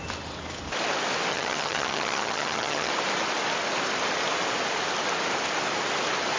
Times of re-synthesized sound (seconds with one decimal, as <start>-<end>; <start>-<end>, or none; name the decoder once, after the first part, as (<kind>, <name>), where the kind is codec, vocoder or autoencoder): 1.3-2.9 (vocoder, HiFi-GAN)